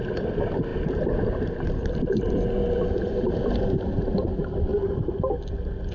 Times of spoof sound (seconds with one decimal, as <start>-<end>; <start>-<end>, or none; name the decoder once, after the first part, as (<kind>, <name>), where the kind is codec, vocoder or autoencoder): 0.7-3.6 (vocoder, BigVGAN v2)